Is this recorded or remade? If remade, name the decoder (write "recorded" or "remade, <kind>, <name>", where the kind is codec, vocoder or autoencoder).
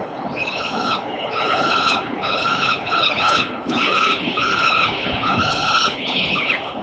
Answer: remade, codec, HILCodec